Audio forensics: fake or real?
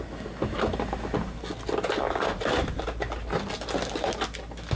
real